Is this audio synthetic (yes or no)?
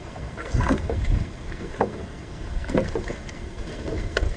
yes